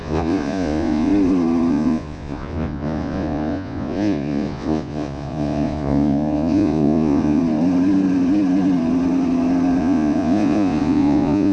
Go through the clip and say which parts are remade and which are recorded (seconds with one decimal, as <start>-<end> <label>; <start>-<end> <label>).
0.0-1.1 remade; 1.1-1.7 recorded; 1.7-7.4 remade; 7.4-9.8 recorded; 9.8-11.5 remade